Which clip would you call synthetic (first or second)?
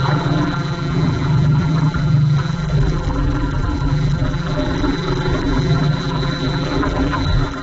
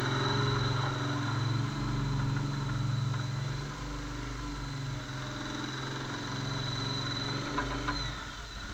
first